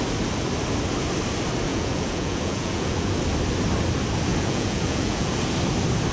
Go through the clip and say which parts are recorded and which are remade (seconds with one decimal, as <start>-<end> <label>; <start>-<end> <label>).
0.0-1.7 recorded; 1.7-3.1 remade; 3.1-4.3 recorded; 4.3-5.3 remade; 5.3-6.1 recorded